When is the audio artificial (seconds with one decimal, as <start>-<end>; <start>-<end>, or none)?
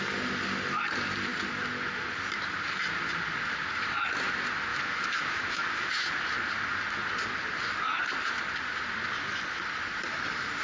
4.7-6.1